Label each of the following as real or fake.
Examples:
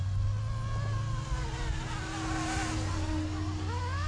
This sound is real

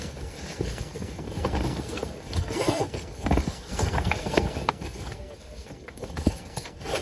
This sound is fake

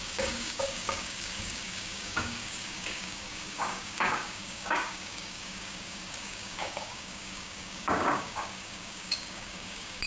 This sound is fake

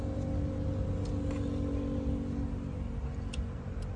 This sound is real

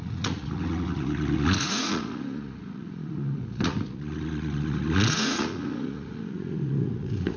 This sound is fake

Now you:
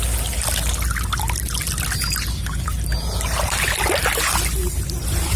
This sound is real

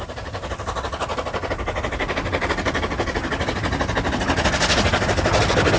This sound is real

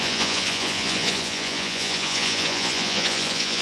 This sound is fake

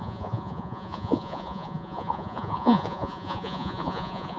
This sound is fake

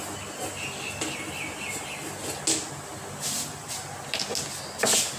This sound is real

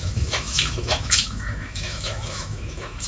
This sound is fake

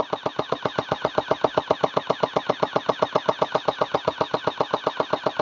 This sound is real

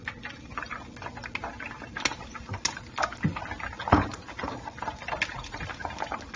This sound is real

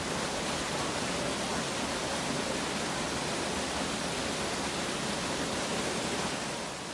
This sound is real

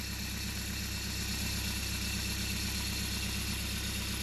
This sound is real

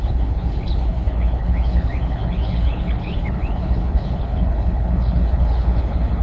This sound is fake